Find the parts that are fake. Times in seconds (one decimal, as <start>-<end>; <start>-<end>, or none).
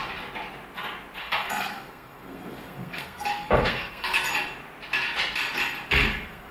1.2-4.3; 5.9-6.5